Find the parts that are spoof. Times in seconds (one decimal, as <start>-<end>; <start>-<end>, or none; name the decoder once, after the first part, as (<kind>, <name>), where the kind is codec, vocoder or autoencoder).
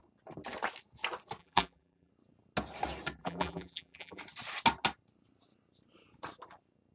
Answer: 1.4-2.1 (vocoder, BigVGAN v2); 3.2-4.2